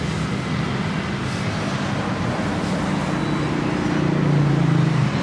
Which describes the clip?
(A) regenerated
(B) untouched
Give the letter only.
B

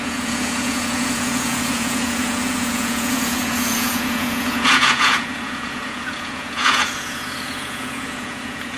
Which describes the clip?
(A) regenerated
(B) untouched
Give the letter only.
A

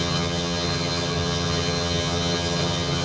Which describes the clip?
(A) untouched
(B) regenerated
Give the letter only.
B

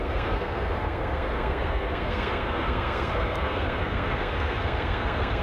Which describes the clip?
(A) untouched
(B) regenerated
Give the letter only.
B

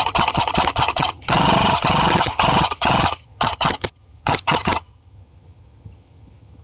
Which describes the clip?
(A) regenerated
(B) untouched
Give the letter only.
A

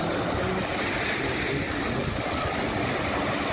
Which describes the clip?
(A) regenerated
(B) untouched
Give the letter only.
B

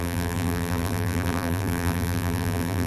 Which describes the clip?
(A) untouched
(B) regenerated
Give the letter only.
B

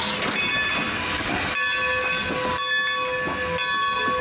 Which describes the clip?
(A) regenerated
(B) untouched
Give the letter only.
B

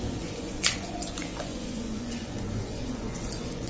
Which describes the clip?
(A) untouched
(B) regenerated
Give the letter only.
B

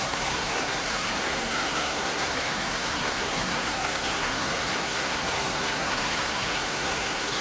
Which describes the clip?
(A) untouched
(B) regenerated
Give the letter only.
B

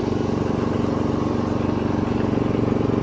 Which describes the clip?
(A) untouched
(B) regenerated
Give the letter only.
A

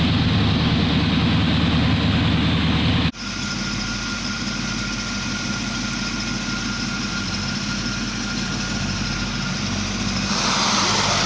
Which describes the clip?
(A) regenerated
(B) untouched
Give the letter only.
B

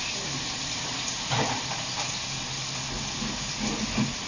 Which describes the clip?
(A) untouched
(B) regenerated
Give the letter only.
A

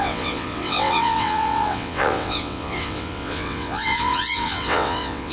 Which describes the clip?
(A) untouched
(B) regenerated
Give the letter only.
B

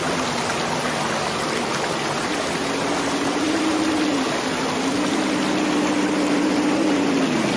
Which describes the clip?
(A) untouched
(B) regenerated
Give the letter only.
A